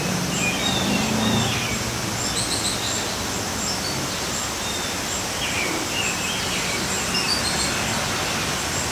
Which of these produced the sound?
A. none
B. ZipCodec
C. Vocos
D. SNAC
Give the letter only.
A